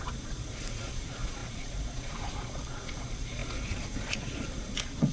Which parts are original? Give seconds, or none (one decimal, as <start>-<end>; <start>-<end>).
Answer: none